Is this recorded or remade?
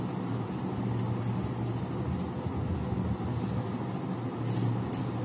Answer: recorded